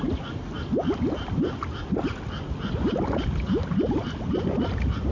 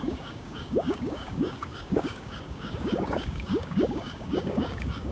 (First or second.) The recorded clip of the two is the first